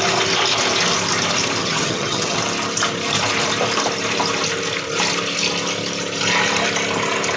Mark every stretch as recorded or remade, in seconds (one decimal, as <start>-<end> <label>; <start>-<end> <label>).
0.0-1.6 recorded; 1.6-2.4 remade; 2.4-7.4 recorded

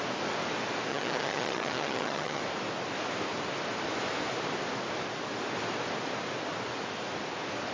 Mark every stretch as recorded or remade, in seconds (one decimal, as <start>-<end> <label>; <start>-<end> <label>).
0.0-0.9 recorded; 0.9-2.4 remade; 2.4-7.7 recorded

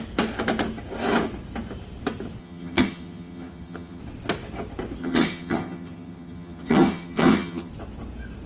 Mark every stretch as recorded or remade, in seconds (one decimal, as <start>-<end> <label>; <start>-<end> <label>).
0.0-2.4 recorded; 2.4-4.0 remade; 4.0-5.0 recorded; 5.0-7.7 remade; 7.7-8.5 recorded

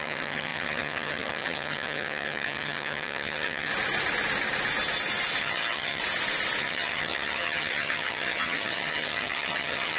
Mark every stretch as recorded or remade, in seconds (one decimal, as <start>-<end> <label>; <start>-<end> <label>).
0.0-3.7 remade; 3.7-5.4 recorded; 5.4-6.0 remade; 6.0-6.6 recorded; 6.6-10.0 remade